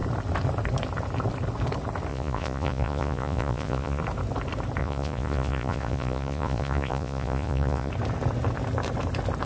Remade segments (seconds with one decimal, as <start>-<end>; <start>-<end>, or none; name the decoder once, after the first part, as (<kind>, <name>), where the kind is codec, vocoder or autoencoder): 2.1-4.0 (vocoder, Vocos); 4.8-7.9